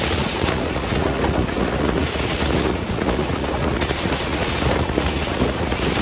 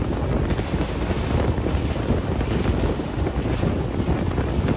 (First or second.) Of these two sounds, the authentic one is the second